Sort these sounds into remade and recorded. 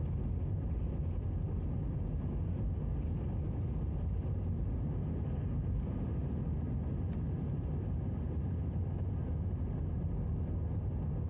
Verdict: recorded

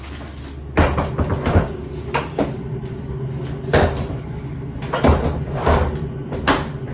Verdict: recorded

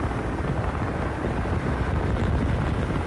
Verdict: recorded